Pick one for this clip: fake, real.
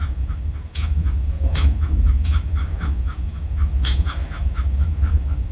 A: fake